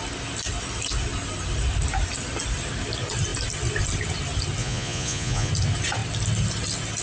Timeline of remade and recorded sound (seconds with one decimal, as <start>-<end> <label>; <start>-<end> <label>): 0.0-4.6 recorded; 4.6-5.5 remade; 5.5-7.0 recorded